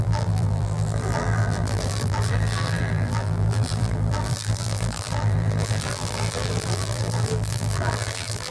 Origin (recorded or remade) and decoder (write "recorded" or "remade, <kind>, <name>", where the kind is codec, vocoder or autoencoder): remade, vocoder, BigVGAN v2